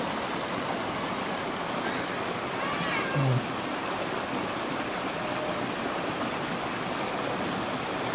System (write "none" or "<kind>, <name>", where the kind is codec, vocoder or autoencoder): none